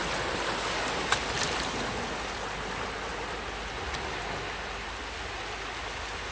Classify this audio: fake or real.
real